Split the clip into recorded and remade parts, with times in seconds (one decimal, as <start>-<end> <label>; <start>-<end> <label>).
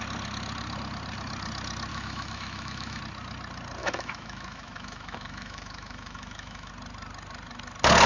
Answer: 0.0-1.9 recorded; 1.9-3.0 remade; 3.0-3.8 recorded; 3.8-6.7 remade; 6.7-8.1 recorded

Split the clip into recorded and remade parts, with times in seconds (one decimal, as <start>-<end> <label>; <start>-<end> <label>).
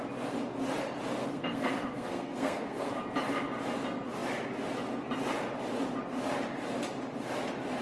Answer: 0.0-1.2 recorded; 1.2-2.9 remade; 2.9-7.8 recorded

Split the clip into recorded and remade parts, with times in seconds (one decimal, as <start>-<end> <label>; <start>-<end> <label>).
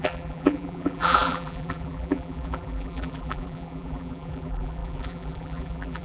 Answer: 0.0-6.0 remade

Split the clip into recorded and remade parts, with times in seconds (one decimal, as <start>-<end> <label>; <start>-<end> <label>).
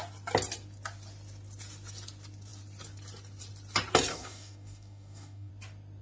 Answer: 0.0-4.1 recorded; 4.1-5.5 remade; 5.5-6.0 recorded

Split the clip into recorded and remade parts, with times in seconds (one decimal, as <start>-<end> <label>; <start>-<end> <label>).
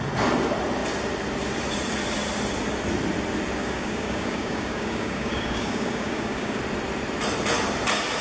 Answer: 0.0-3.6 recorded; 3.6-6.6 remade; 6.6-8.2 recorded